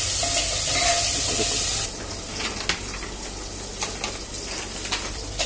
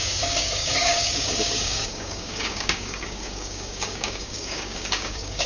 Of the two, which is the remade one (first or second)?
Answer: second